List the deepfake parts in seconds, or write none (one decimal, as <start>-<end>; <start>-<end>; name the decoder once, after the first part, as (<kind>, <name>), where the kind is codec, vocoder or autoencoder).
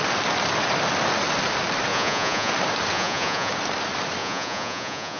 1.9-2.5 (vocoder, Vocos); 2.9-3.5; 4.2-5.2